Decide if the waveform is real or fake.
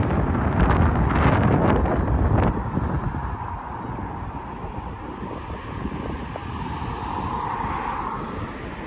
real